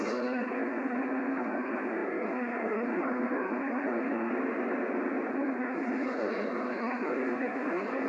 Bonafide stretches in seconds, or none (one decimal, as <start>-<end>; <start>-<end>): 4.3-5.3